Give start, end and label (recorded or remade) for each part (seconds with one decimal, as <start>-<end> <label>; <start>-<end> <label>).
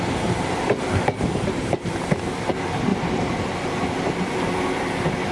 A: 0.0-2.9 recorded; 2.9-3.7 remade; 3.7-5.3 recorded